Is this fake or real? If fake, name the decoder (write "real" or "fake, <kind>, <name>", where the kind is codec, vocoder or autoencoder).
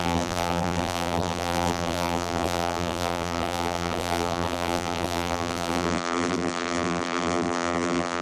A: fake, vocoder, BigVGAN v2